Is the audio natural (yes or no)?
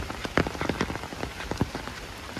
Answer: yes